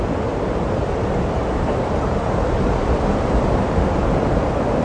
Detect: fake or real fake